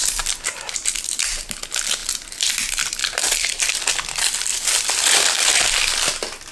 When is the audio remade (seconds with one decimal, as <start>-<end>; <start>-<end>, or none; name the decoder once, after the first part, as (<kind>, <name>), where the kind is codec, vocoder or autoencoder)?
2.0-2.5 (vocoder, BigVGAN v2); 3.0-3.7; 4.5-5.7